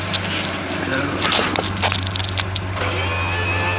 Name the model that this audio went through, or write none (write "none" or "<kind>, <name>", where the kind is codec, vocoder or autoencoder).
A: none